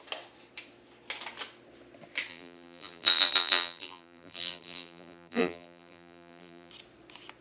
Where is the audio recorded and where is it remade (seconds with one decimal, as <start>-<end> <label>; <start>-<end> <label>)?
0.0-2.3 recorded; 2.3-6.7 remade; 6.7-7.4 recorded